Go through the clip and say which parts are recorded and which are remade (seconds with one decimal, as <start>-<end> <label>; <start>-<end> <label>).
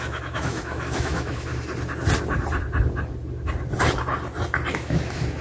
0.0-1.5 remade; 1.5-4.7 recorded; 4.7-5.4 remade